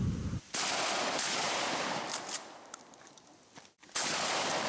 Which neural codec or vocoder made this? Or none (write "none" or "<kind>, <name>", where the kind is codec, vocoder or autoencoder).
none